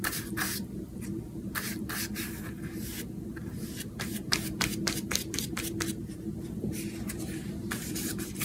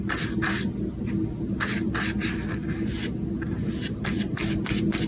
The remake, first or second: first